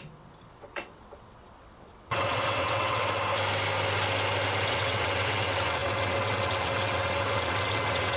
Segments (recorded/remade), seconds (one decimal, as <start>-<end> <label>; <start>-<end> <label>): 0.0-3.0 remade; 3.0-4.7 recorded; 4.7-8.2 remade